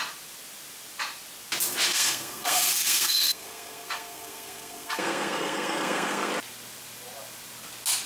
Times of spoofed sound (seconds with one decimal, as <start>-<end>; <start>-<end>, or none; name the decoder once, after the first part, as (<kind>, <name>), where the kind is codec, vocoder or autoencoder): 1.9-6.3 (codec, SNAC)